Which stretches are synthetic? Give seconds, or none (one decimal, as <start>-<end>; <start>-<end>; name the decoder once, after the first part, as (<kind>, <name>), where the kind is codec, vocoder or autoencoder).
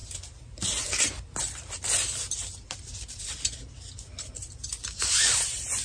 none